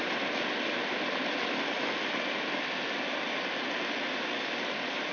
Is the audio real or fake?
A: real